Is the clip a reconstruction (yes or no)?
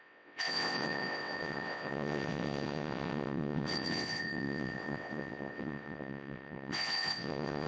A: yes